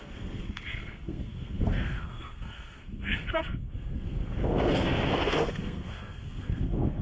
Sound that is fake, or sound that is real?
fake